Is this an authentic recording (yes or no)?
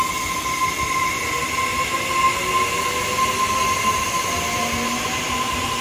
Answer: yes